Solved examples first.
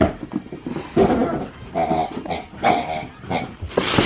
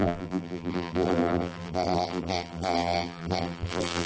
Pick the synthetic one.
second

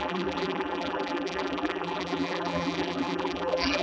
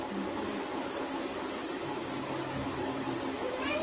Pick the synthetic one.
first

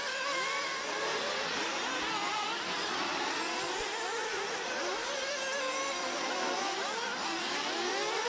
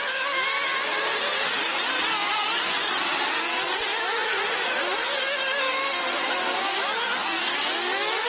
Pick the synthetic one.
first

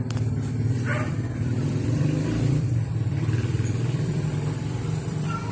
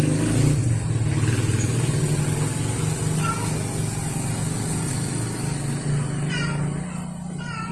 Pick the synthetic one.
first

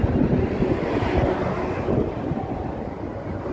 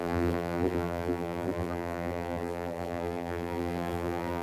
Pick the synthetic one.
second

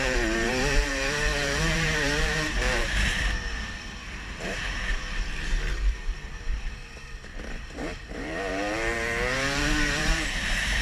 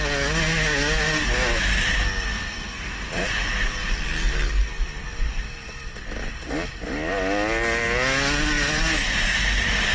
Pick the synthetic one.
first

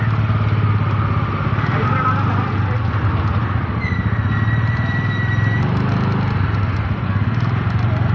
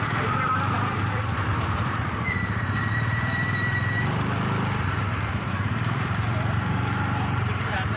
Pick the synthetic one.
second